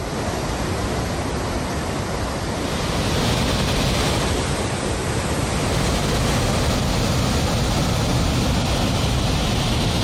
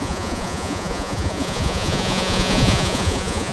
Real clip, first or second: first